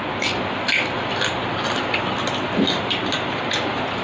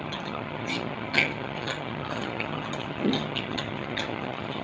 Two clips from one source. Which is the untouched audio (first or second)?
first